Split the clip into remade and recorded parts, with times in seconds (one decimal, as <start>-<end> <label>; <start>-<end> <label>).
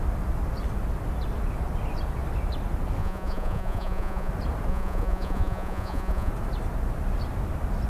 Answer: 0.0-3.0 recorded; 3.0-4.3 remade; 4.3-4.7 recorded; 4.7-6.3 remade; 6.3-7.9 recorded